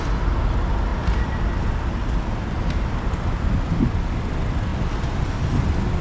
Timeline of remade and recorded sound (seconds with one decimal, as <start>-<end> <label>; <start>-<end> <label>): 0.0-6.0 recorded